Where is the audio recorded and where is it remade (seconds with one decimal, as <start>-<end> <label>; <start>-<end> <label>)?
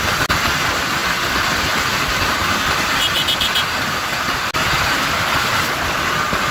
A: 0.0-6.5 recorded